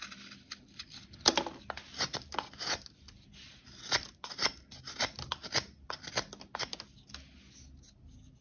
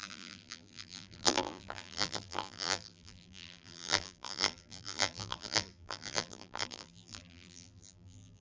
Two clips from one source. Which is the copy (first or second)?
second